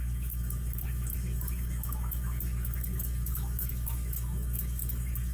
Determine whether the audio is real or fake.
fake